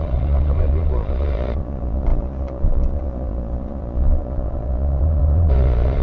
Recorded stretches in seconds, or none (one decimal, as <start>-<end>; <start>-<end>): none